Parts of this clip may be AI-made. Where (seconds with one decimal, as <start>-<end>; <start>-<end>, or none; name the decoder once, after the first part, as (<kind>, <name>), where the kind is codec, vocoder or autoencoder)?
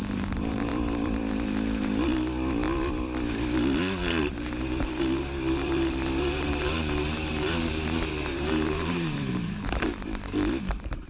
0.0-0.7 (vocoder, BigVGAN v2); 4.2-9.9; 10.6-11.1